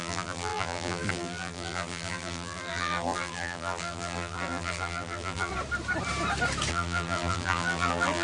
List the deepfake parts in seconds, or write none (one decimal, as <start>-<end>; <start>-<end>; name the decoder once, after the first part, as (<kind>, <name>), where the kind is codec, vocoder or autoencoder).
0.0-5.5 (vocoder, BigVGAN v2); 6.7-8.2